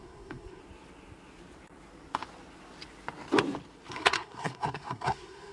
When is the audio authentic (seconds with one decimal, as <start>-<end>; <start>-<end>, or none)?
0.6-3.9